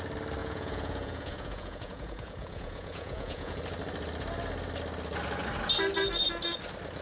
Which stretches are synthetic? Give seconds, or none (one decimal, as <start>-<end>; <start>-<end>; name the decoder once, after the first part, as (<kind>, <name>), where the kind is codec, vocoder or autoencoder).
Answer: 0.4-3.6 (vocoder, Vocos)